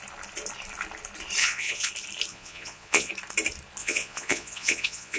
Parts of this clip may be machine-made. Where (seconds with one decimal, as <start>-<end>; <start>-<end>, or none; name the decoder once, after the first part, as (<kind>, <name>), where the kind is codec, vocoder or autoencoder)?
1.4-1.9 (vocoder, Vocos); 2.3-3.1; 3.8-5.2

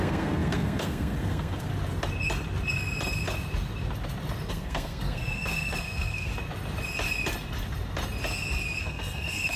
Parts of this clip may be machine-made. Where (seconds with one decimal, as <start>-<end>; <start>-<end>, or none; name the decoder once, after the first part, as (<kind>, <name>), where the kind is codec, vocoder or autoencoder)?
0.0-1.7 (codec, SNAC); 4.5-6.3; 8.8-9.6